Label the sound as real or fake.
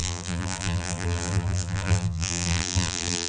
fake